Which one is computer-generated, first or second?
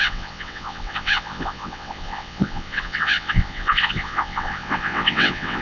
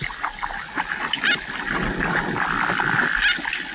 first